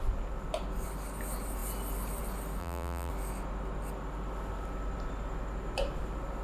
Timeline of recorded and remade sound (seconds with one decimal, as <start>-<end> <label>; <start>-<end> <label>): 0.0-2.6 recorded; 2.6-3.1 remade; 3.1-6.4 recorded